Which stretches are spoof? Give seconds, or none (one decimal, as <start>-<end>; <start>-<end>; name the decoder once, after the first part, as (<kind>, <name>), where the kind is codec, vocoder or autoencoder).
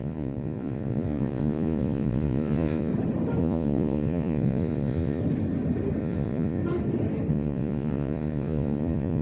0.0-2.9 (vocoder, Vocos); 3.4-5.2; 6.0-6.6; 7.3-9.2